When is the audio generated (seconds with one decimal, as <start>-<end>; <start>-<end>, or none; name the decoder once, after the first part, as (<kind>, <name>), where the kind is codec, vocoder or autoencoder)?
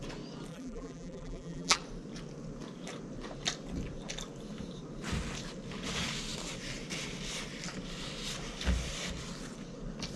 0.5-1.8 (vocoder, BigVGAN v2)